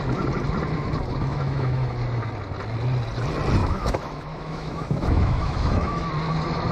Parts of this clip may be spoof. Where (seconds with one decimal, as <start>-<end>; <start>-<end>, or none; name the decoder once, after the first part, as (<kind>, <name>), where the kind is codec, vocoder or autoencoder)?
1.3-1.9 (autoencoder, DAC-VAE); 3.6-6.1